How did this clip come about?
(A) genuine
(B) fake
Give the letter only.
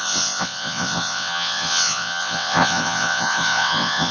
B